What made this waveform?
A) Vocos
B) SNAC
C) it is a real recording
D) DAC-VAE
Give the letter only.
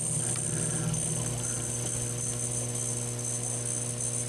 C